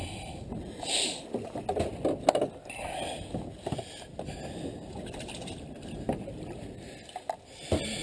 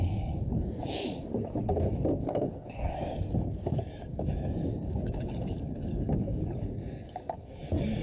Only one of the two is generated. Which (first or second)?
second